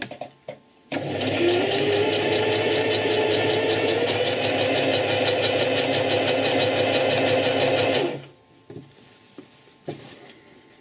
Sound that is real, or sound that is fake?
real